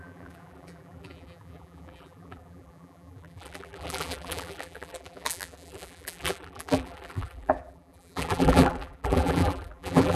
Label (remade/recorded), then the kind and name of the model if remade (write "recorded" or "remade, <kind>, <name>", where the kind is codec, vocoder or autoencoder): remade, vocoder, BigVGAN v2